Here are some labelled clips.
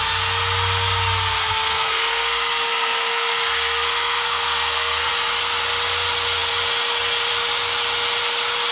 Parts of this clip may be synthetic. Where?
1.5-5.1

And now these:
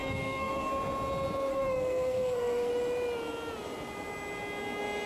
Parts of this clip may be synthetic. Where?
0.0-0.7; 1.5-2.7

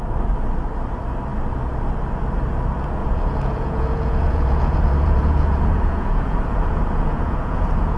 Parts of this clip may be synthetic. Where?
3.0-8.0

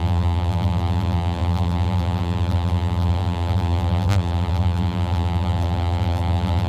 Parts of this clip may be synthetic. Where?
0.0-6.7